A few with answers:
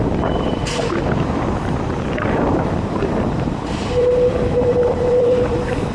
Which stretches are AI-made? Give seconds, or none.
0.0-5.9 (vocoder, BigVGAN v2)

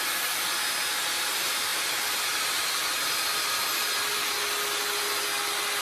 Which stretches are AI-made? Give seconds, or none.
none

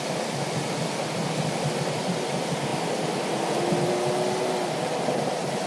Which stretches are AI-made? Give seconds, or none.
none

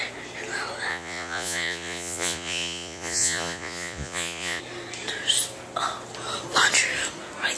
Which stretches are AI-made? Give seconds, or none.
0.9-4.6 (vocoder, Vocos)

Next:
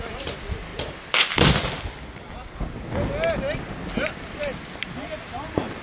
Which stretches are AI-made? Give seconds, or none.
none